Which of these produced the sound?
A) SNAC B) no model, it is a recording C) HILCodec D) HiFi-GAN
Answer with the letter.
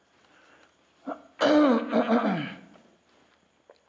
B